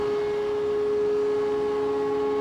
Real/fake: real